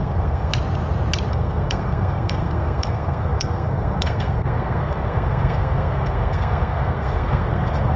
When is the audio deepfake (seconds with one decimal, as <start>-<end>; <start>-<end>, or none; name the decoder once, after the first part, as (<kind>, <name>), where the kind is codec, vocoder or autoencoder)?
0.0-0.5 (codec, SNAC); 1.3-8.0